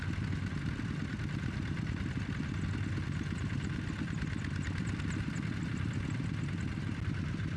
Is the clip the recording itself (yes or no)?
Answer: yes